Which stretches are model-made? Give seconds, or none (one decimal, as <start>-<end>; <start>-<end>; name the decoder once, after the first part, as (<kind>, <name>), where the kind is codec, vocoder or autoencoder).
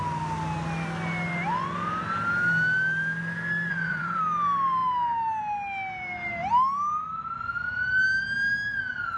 3.7-4.2 (vocoder, WaveNeXt)